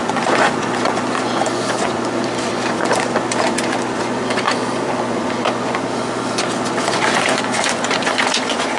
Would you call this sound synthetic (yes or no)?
yes